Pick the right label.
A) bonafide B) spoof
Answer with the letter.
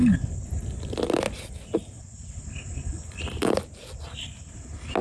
A